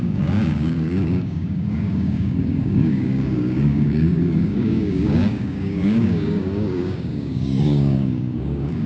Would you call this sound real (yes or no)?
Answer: no